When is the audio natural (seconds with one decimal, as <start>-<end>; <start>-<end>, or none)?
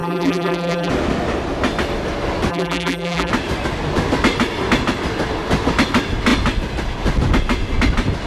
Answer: 0.9-2.5; 3.3-8.3